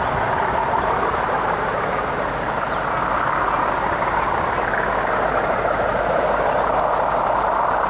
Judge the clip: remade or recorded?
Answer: recorded